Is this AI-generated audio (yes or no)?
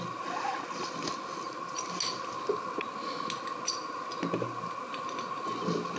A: no